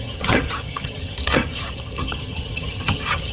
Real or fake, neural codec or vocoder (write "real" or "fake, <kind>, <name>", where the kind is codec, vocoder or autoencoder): fake, vocoder, HiFi-GAN